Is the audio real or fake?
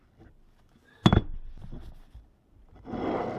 real